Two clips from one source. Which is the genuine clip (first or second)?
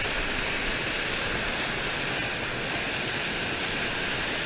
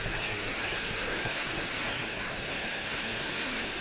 first